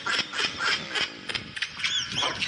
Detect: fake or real real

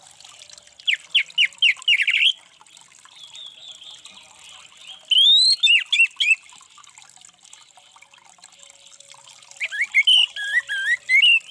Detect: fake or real real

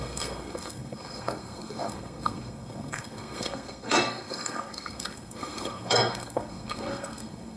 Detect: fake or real fake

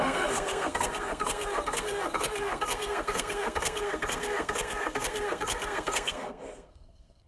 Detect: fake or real fake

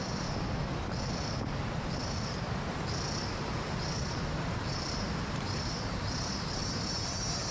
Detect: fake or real real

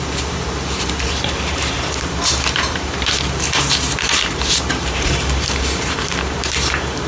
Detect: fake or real fake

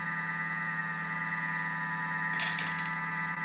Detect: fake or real real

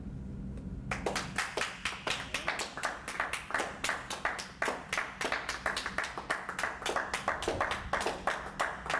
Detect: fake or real real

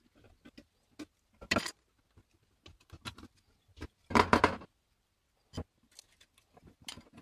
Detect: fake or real real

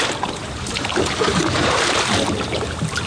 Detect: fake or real real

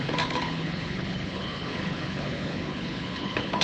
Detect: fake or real fake